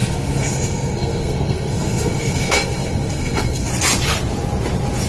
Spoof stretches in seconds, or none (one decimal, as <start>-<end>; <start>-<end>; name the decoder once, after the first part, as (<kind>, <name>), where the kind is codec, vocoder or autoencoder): 0.0-3.7 (codec, SNAC)